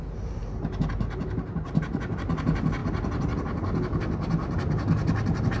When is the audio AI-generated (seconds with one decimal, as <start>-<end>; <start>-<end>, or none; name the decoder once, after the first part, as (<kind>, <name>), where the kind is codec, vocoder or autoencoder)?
none

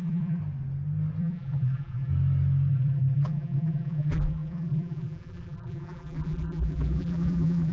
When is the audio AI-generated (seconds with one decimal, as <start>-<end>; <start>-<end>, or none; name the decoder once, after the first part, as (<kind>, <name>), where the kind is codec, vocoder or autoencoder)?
0.0-0.4 (vocoder, BigVGAN v2); 1.2-2.1; 2.7-7.7

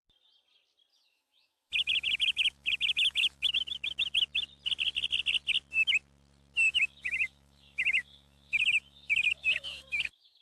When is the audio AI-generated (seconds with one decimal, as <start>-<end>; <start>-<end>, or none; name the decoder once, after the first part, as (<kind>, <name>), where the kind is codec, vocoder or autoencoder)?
0.9-3.5 (autoencoder, DAC-VAE); 6.7-10.4

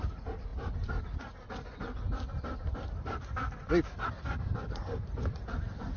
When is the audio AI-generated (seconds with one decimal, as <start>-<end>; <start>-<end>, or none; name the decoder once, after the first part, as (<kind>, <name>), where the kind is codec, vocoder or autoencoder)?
none

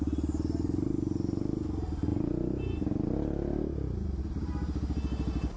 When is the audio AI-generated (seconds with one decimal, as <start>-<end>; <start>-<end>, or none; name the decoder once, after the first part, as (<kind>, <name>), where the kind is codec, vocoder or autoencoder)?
none